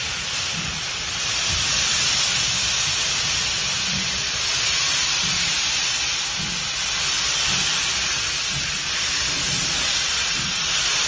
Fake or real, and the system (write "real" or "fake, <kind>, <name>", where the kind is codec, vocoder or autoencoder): real